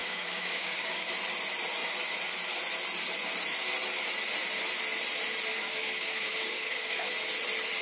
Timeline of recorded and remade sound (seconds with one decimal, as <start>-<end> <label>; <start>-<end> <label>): 0.0-1.1 remade; 1.1-5.5 recorded; 5.5-7.1 remade; 7.1-7.8 recorded